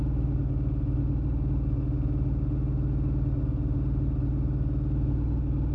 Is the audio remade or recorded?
recorded